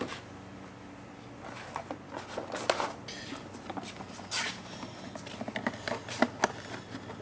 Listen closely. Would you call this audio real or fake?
real